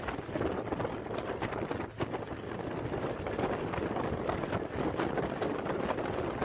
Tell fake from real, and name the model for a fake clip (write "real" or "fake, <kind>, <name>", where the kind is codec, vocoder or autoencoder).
real